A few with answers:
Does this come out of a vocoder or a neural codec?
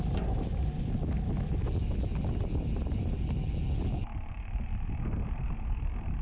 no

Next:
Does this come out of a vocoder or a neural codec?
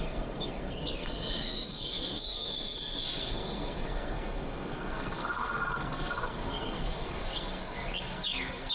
yes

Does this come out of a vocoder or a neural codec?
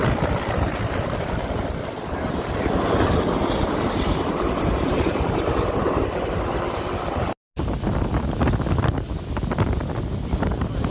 no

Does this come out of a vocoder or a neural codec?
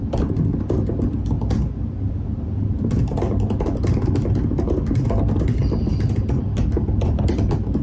no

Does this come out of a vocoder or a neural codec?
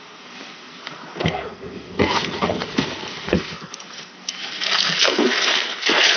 yes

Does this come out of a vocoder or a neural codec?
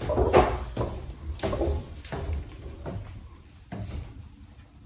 yes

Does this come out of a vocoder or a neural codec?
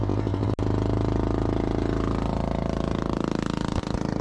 no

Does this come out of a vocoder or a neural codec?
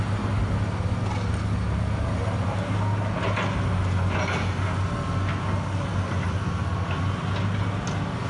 no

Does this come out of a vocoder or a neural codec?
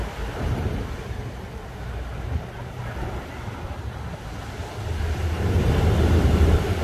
no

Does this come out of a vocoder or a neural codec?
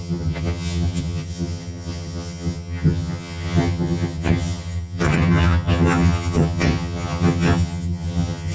yes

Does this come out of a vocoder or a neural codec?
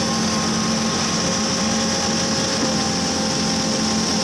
no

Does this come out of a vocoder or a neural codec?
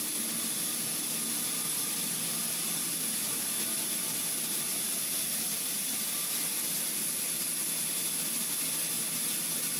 no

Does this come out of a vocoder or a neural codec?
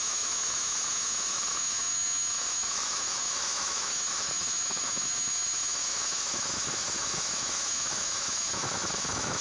yes